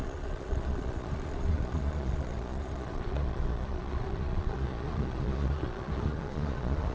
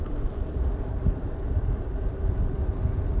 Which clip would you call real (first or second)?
second